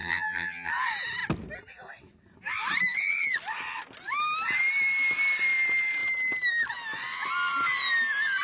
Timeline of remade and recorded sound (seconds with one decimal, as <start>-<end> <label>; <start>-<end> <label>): 0.0-0.7 remade; 0.7-8.4 recorded